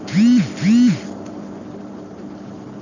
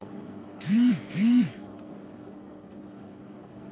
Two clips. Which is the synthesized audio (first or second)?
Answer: second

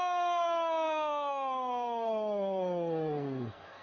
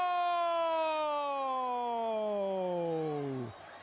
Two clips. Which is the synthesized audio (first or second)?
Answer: first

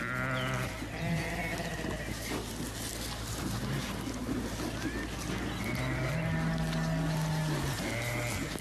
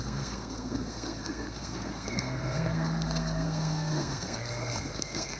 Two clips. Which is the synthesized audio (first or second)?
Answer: second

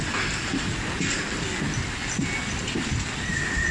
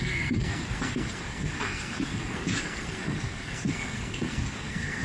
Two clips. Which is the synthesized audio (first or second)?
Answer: second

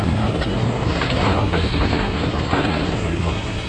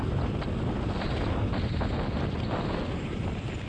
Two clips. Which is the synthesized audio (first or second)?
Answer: first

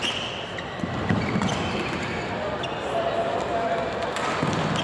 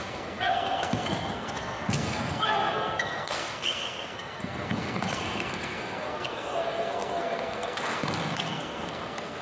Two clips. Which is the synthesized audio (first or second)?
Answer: second